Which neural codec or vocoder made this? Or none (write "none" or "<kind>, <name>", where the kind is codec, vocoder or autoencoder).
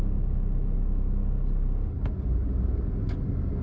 none